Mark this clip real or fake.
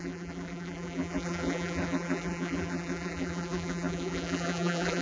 fake